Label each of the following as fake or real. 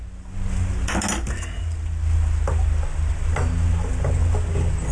real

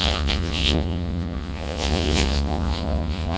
fake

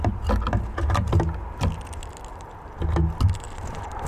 real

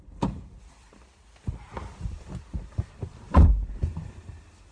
real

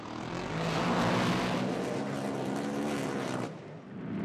real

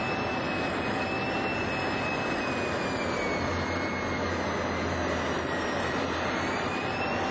real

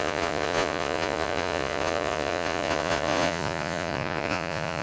fake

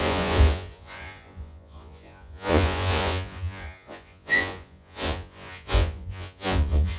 fake